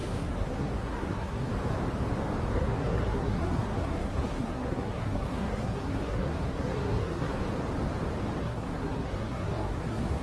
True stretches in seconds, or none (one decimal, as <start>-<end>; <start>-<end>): 1.5-2.5; 7.4-8.4